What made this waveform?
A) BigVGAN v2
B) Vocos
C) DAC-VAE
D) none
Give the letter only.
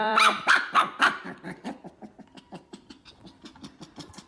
A